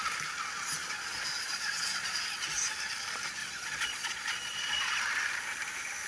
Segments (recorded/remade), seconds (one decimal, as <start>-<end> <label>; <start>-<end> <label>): 0.0-0.8 recorded; 0.8-2.2 remade; 2.2-3.4 recorded; 3.4-5.0 remade; 5.0-6.1 recorded